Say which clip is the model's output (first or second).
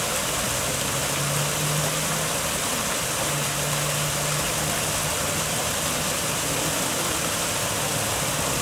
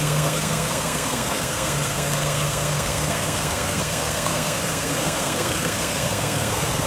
second